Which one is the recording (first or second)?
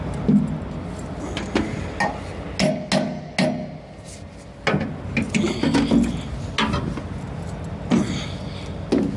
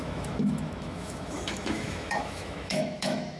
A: first